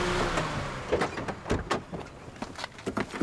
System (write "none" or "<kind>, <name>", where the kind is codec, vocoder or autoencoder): none